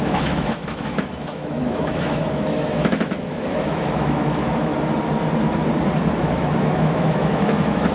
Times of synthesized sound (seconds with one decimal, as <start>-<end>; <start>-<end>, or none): 0.0-4.7; 6.2-7.9